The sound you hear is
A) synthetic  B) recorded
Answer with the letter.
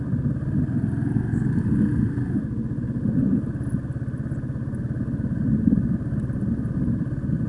B